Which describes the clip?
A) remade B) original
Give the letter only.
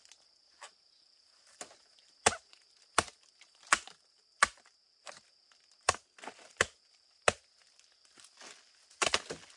B